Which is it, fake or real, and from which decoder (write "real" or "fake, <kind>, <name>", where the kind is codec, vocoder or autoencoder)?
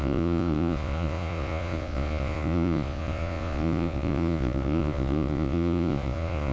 fake, vocoder, Vocos